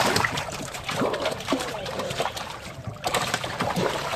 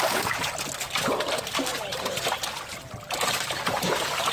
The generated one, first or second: first